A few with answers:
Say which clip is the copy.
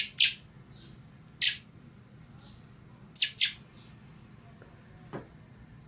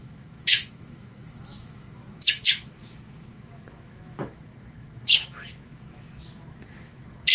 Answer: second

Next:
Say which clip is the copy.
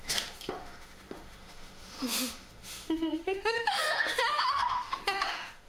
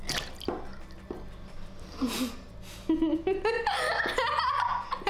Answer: first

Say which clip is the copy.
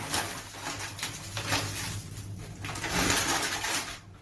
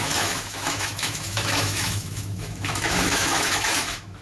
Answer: second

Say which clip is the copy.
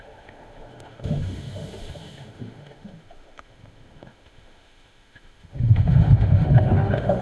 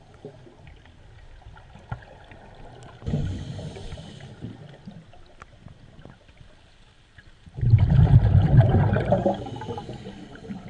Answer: first